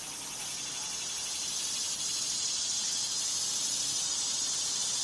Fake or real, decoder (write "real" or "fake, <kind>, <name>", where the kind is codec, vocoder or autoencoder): real